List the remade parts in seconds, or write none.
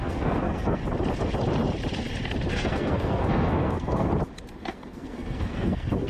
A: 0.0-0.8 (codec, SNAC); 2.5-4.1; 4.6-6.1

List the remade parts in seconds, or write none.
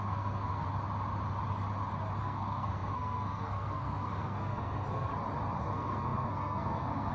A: 0.0-0.7 (codec, SNAC); 2.2-5.1; 5.6-7.1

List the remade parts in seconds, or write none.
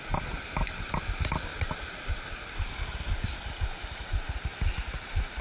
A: 1.5-3.6 (vocoder, BigVGAN v2)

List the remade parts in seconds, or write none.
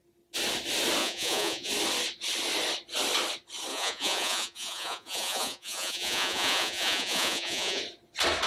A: 1.0-1.7 (vocoder, Vocos); 3.7-7.8